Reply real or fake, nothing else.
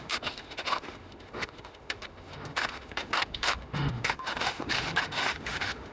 fake